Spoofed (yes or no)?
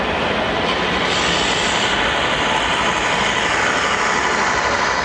yes